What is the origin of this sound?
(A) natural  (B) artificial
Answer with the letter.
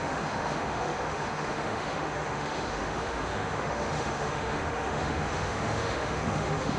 B